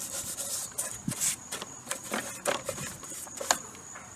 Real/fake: fake